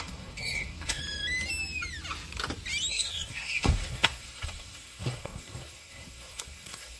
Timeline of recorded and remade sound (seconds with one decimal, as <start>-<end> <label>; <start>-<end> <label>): 0.0-1.0 remade; 1.0-2.9 recorded; 2.9-7.0 remade